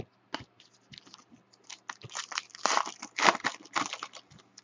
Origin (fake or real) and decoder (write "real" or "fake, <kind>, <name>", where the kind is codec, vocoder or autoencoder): real